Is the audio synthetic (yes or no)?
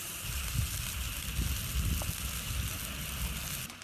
no